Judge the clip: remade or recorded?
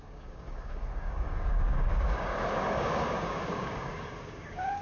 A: remade